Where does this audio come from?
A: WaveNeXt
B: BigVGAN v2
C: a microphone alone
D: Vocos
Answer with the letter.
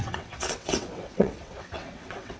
A